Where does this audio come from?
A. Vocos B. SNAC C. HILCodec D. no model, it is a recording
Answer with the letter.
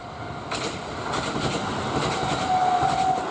D